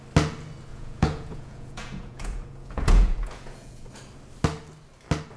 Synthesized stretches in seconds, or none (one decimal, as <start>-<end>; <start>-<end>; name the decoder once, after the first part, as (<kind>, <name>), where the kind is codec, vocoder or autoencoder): 0.7-3.9 (vocoder, Vocos)